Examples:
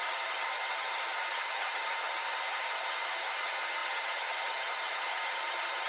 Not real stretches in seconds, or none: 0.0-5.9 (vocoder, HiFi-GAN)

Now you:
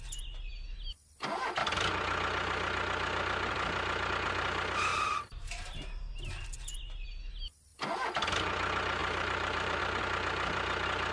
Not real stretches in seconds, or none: 4.9-6.1 (vocoder, BigVGAN v2); 9.0-9.8

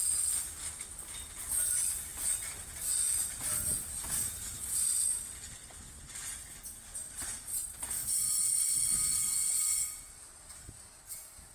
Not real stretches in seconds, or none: none

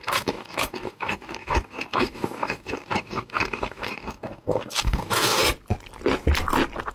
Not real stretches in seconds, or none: 0.0-5.4 (codec, DAC)

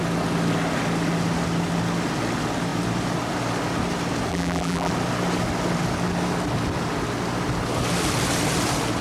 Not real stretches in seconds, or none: 4.3-4.9 (vocoder, BigVGAN v2)

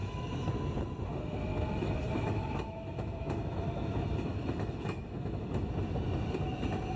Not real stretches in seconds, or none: 0.0-0.5 (autoencoder, DAC-VAE); 1.5-5.7